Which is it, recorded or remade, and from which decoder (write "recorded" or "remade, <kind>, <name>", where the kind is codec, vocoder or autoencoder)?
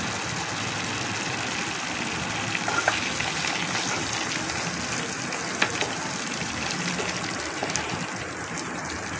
recorded